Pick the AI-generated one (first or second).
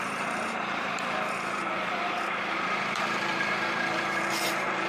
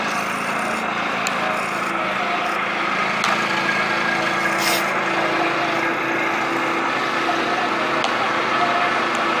first